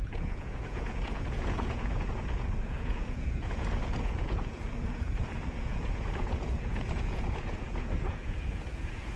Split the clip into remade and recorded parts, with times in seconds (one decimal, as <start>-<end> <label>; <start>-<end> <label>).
0.0-9.2 remade